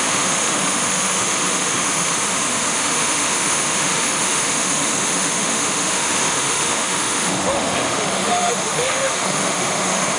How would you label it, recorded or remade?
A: remade